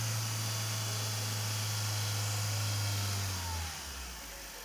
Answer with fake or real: real